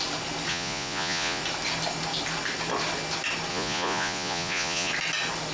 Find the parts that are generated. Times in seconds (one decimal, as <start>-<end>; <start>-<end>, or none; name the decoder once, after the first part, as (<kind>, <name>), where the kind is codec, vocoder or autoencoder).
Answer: 0.5-1.4 (vocoder, Vocos); 3.5-4.9

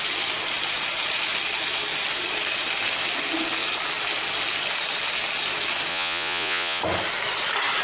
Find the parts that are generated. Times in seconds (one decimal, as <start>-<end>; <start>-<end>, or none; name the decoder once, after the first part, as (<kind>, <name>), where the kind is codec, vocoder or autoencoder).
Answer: 5.9-6.8 (vocoder, Vocos)

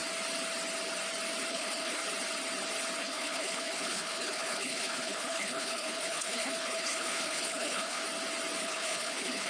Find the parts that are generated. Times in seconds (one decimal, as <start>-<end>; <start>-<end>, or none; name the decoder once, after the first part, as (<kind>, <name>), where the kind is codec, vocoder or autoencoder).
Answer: 1.5-2.0 (codec, HILCodec); 3.0-8.0; 8.6-9.5

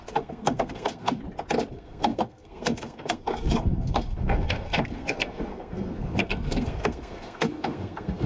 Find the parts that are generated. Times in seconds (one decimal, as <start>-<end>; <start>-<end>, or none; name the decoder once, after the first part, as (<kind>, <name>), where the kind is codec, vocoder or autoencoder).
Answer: 0.0-1.2 (codec, SNAC); 1.7-8.3

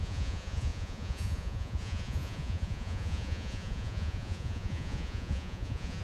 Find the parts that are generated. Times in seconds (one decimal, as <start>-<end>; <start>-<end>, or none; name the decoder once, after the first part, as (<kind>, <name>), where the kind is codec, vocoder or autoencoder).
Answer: 0.0-6.0 (vocoder, Vocos)

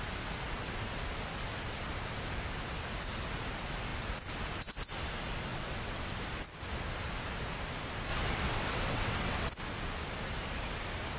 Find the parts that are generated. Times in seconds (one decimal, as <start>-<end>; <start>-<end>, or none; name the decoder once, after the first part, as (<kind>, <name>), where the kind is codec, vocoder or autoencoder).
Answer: 5.5-6.2 (vocoder, WaveNeXt); 8.1-9.5

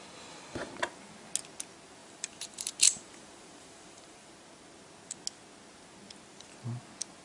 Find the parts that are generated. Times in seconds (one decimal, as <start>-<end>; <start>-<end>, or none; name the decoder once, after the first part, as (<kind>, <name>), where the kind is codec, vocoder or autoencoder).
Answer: 2.0-4.3 (vocoder, BigVGAN v2)